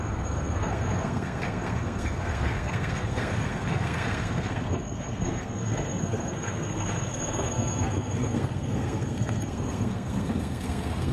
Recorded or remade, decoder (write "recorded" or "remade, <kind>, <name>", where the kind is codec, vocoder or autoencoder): remade, codec, SNAC